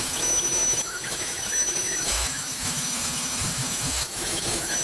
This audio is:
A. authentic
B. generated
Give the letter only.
B